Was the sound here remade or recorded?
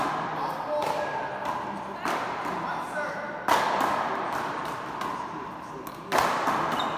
recorded